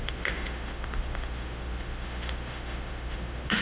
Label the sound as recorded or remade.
remade